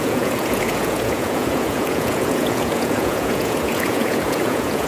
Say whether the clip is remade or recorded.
remade